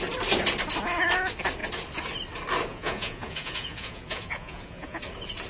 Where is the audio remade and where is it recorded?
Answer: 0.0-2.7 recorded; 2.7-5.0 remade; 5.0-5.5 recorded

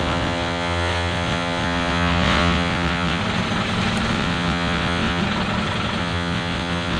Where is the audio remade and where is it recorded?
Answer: 0.0-3.2 remade; 3.2-4.1 recorded; 4.1-5.2 remade; 5.2-6.0 recorded; 6.0-7.0 remade

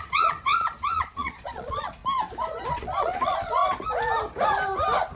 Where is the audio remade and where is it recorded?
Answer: 0.0-2.0 remade; 2.0-2.7 recorded; 2.7-3.6 remade; 3.6-5.2 recorded